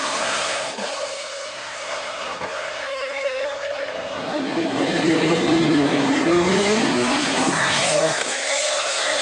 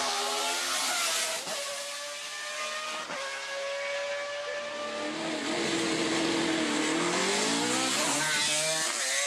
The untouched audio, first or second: second